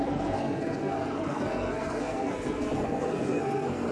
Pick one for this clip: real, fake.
fake